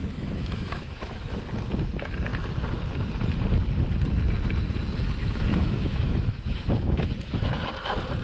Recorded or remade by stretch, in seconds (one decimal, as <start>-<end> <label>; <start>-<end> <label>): 0.0-1.4 remade; 1.4-5.2 recorded; 5.2-7.1 remade; 7.1-8.2 recorded